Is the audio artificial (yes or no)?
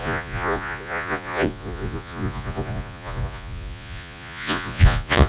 yes